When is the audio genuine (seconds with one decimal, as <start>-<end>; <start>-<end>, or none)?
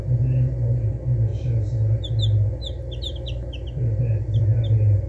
0.0-5.1